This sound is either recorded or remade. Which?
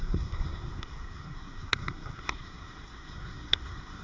remade